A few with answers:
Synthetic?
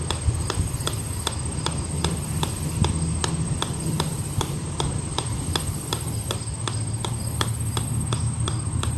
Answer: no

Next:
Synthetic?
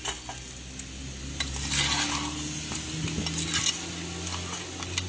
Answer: no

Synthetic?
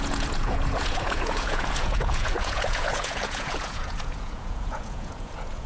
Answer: yes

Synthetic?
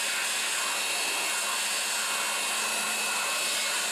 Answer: no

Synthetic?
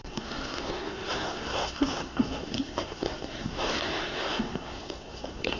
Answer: yes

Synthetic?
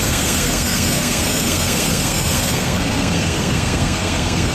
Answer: yes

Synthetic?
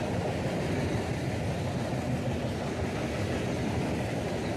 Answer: no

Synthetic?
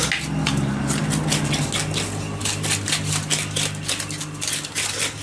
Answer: no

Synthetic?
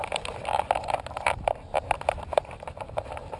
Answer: yes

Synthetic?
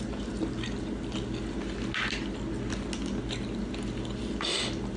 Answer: no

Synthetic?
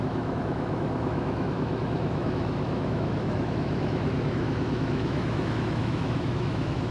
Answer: yes